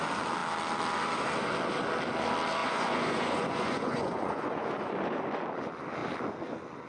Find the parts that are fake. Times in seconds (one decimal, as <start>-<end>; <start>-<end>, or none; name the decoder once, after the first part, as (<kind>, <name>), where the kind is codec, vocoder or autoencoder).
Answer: 2.6-4.9 (vocoder, Vocos)